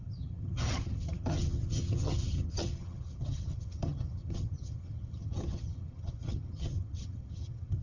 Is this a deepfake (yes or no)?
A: yes